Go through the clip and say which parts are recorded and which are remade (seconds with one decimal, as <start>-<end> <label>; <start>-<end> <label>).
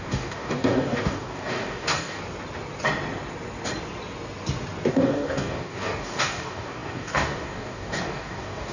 0.0-2.2 remade; 2.2-4.9 recorded; 4.9-8.7 remade